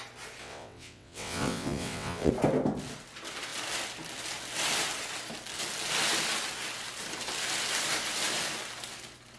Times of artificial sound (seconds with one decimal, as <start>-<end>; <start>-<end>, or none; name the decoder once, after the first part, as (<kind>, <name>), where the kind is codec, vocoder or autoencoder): 0.4-2.3 (vocoder, WaveNeXt)